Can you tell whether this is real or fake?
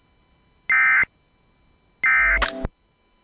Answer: real